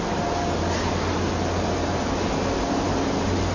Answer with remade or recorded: recorded